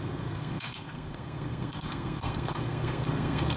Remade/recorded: remade